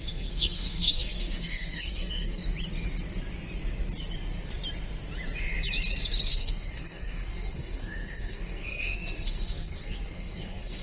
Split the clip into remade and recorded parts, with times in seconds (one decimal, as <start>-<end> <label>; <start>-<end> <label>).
0.0-2.4 remade; 2.4-6.3 recorded; 6.3-10.8 remade